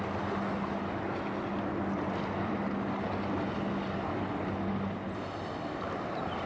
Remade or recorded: recorded